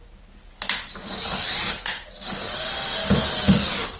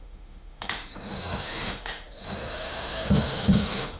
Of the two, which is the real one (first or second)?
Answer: first